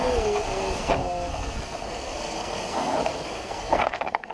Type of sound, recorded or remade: remade